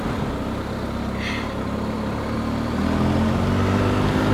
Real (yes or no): yes